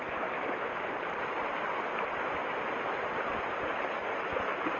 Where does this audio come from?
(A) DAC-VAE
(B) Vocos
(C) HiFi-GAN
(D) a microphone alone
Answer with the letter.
D